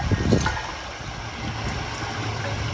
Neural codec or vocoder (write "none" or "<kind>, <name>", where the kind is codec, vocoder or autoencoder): none